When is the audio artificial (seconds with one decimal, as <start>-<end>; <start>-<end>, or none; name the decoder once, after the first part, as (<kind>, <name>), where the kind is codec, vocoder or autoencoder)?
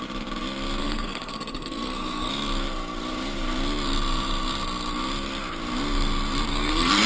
0.8-2.3 (codec, SNAC); 6.5-7.1